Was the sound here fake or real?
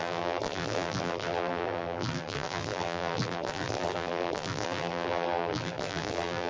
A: fake